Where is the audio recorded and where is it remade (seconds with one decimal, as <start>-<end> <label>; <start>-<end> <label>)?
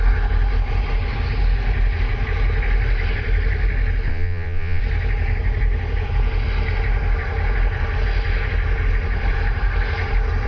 0.0-4.1 recorded; 4.1-4.8 remade; 4.8-10.5 recorded